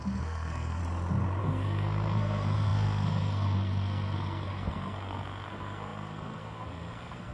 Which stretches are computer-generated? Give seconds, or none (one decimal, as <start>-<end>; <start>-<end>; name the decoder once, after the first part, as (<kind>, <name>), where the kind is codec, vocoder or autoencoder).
0.0-0.8 (codec, SNAC); 1.4-7.3